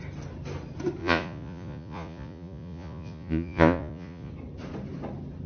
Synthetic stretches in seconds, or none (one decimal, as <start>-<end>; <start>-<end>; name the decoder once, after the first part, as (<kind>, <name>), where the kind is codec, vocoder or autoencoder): 1.0-4.3 (vocoder, Vocos)